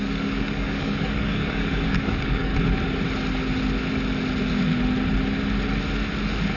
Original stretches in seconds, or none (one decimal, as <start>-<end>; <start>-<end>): 2.5-6.6